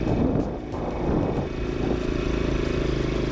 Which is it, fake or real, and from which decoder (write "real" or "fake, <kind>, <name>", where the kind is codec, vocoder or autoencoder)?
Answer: real